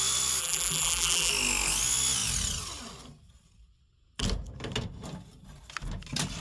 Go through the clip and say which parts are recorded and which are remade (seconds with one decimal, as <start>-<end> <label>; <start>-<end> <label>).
0.0-0.4 recorded; 0.4-1.3 remade; 1.3-6.4 recorded

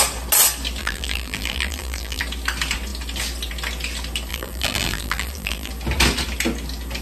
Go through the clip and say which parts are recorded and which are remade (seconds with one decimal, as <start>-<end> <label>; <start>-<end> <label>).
0.0-0.8 recorded; 0.8-2.2 remade; 2.2-4.3 recorded; 4.3-5.7 remade; 5.7-7.0 recorded

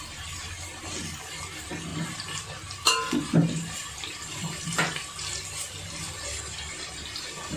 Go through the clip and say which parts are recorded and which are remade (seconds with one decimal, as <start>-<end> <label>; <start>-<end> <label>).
0.0-7.6 recorded

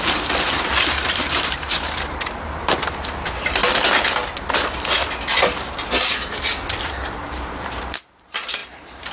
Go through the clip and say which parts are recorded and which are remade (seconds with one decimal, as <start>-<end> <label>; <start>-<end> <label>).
0.0-3.6 remade; 3.6-6.8 recorded; 6.8-9.1 remade

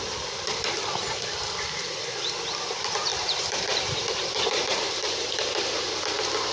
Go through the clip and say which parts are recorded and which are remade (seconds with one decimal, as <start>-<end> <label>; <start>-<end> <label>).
0.0-3.1 recorded; 3.1-5.9 remade; 5.9-6.5 recorded

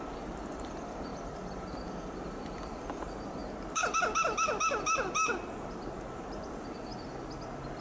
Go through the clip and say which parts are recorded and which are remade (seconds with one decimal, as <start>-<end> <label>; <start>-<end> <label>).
0.0-3.4 remade; 3.4-6.1 recorded; 6.1-6.9 remade; 6.9-7.8 recorded

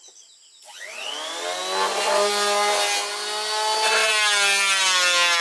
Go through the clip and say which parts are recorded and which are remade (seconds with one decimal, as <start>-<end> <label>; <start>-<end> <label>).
0.0-5.4 recorded